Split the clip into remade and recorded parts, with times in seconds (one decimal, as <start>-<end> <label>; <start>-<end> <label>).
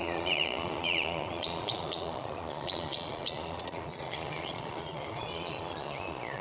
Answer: 0.0-6.4 remade